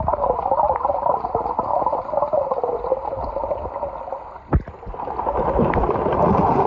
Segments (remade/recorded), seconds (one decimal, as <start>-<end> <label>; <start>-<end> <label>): 0.0-6.7 recorded